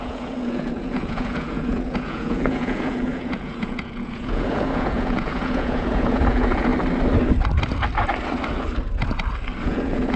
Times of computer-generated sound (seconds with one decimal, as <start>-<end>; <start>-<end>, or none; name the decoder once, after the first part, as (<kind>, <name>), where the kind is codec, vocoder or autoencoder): 0.0-6.7 (vocoder, Vocos); 9.6-10.2